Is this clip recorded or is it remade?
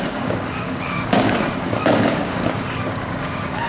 remade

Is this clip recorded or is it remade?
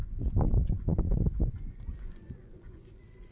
remade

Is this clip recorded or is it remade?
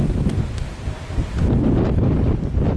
recorded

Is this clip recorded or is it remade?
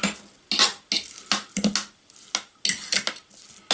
recorded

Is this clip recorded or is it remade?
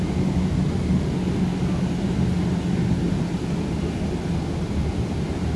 recorded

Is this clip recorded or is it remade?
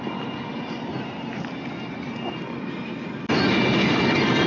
recorded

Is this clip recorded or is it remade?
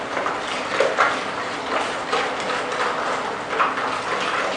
recorded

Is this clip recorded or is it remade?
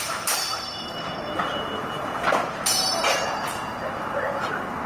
remade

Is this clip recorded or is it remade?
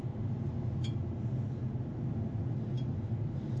recorded